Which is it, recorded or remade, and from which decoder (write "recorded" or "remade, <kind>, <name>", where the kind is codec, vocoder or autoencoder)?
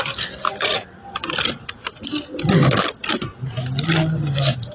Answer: recorded